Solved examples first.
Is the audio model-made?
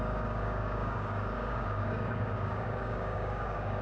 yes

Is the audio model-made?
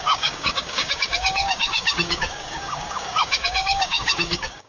yes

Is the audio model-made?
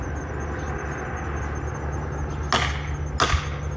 no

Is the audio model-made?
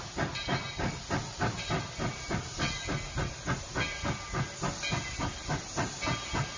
no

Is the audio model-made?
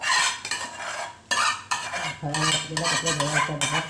no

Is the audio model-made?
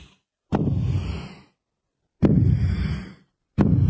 no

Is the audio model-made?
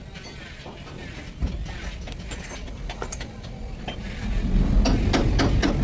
no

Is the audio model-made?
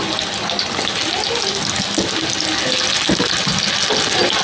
no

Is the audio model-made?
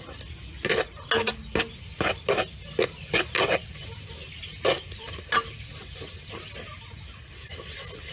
no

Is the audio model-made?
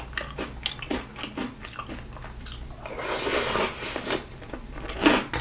no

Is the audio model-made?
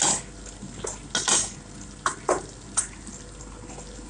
no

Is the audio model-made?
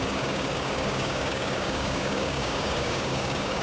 yes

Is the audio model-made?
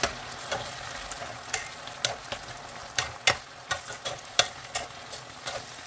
no